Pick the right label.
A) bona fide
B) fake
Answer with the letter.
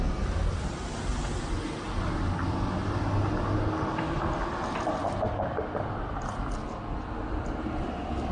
A